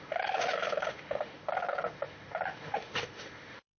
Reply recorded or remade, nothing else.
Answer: remade